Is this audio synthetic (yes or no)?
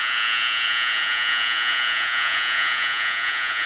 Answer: yes